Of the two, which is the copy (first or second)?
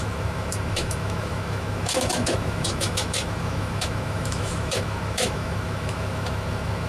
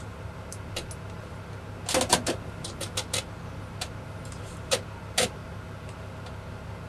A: first